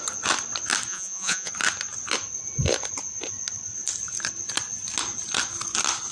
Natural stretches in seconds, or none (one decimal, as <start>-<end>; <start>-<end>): 0.0-0.9; 1.5-6.1